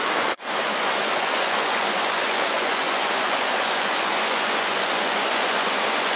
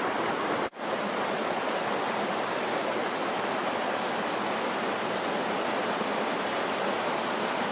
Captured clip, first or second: second